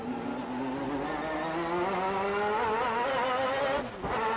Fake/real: real